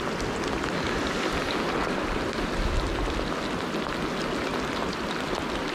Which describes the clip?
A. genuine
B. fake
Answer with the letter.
A